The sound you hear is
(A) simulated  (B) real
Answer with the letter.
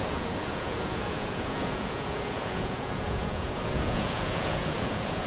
A